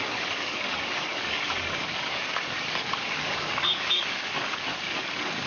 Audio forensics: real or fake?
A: fake